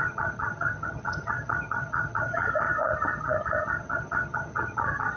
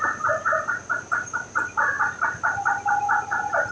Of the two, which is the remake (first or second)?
first